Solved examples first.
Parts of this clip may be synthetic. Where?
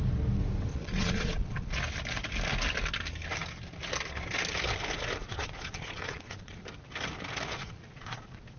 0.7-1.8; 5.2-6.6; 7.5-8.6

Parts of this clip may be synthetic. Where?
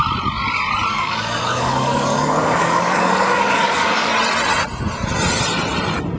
0.9-4.1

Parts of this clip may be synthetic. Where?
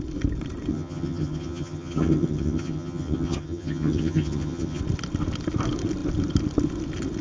0.7-4.8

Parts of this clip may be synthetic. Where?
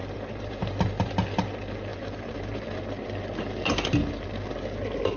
0.0-0.6; 1.9-2.8